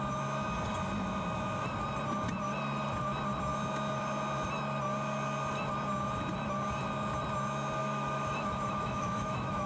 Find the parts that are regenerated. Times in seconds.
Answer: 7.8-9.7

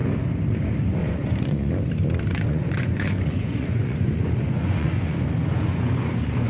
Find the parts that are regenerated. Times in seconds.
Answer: 1.0-1.7; 2.3-6.5

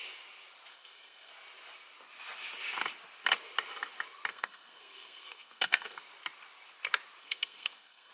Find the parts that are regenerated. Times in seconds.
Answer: 0.7-1.3; 4.3-6.0; 7.2-8.1

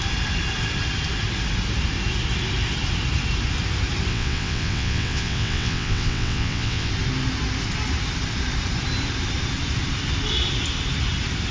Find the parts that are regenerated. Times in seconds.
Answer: 4.1-6.9

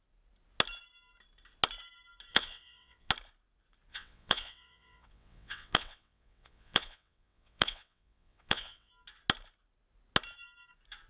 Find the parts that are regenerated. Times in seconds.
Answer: 2.3-3.1; 3.9-8.9

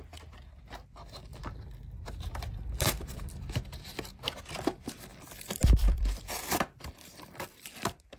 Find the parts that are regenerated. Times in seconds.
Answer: 1.3-4.4; 5.1-7.5

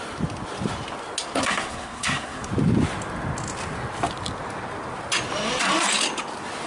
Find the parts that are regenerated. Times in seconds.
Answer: 1.4-2.5

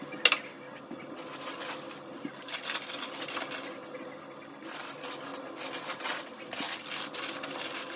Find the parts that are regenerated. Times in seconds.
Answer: 5.3-7.0